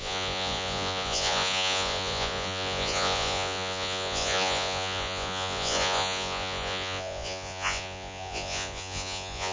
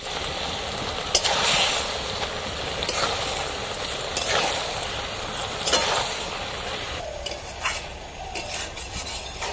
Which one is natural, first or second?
second